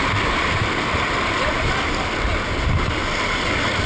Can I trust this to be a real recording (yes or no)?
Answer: yes